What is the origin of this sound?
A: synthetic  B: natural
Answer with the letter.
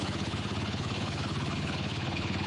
A